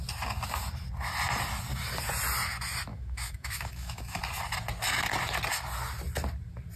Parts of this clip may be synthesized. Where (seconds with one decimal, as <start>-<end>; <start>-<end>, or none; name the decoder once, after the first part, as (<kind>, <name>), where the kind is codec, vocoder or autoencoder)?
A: 2.9-4.2 (autoencoder, DAC-VAE)